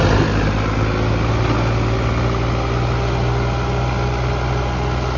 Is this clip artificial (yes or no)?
no